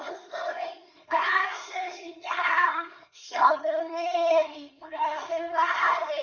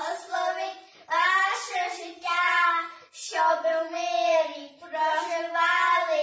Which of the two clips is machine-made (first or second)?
first